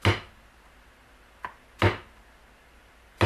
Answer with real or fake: real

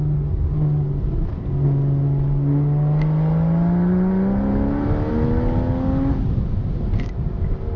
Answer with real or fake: real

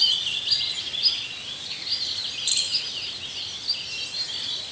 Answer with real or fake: real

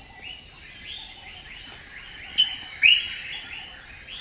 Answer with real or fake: real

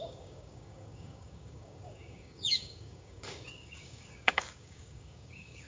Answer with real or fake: fake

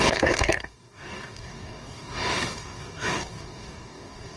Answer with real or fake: fake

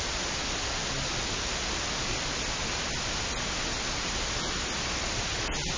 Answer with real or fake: real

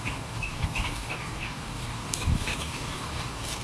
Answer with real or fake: fake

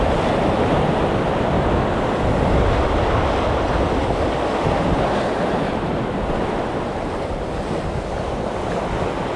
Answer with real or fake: real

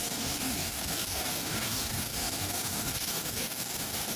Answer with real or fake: fake